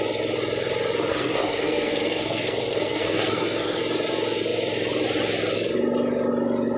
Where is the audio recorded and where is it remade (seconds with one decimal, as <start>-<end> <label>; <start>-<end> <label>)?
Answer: 0.0-1.1 recorded; 1.1-3.8 remade; 3.8-6.8 recorded